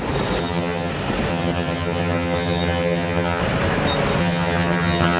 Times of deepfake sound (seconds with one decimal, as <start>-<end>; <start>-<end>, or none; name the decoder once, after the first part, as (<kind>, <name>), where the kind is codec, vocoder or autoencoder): 0.4-0.9 (vocoder, HiFi-GAN); 1.3-3.4; 4.2-5.2